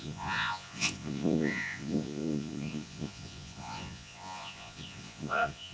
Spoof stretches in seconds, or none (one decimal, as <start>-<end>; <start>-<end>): 0.0-5.7